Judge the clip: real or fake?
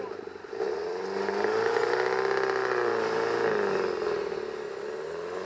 real